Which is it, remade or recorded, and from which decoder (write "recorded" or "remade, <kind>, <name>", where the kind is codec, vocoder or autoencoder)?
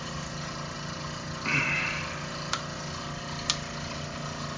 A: recorded